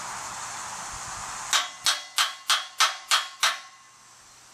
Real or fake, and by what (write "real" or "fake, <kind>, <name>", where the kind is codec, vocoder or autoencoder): real